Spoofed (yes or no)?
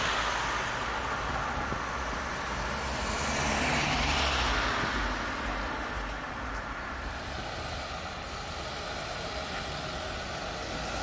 no